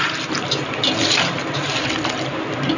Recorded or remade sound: recorded